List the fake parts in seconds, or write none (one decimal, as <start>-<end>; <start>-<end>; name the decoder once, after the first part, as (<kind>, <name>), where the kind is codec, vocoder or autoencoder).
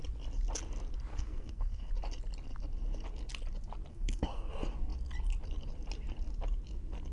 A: 1.1-1.9 (codec, SNAC); 3.9-4.5